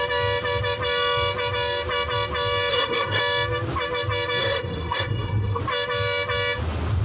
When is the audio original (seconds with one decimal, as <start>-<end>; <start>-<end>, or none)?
0.0-2.7; 3.2-4.4; 5.6-7.0